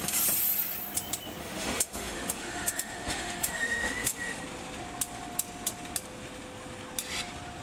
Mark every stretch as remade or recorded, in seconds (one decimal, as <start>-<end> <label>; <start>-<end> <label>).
0.0-1.4 recorded; 1.4-4.4 remade; 4.4-7.6 recorded